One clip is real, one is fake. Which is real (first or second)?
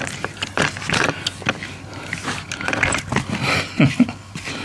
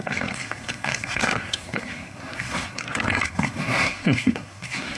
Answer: first